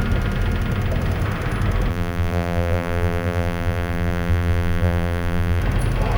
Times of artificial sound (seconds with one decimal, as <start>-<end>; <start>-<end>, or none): 1.9-5.6